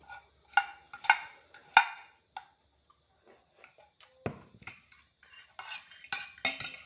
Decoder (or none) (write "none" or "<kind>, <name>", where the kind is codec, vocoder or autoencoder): none